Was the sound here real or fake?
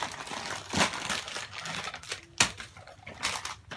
real